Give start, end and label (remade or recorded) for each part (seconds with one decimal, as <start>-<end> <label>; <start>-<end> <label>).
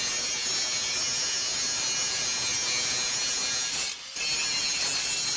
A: 0.0-5.4 recorded